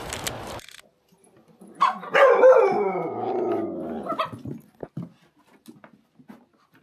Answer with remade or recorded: recorded